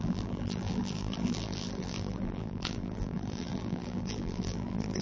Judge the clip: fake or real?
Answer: fake